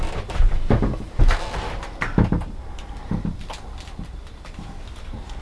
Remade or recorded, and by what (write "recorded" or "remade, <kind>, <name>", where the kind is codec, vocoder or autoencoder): recorded